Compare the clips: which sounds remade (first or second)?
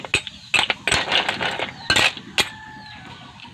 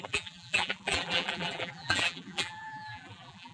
second